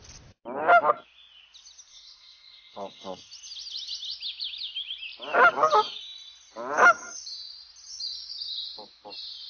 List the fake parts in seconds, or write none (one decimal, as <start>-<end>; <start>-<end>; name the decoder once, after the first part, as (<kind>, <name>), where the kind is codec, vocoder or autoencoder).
1.9-3.3 (codec, SNAC)